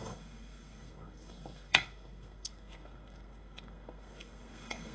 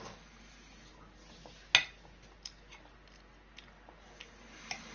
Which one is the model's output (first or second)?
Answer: first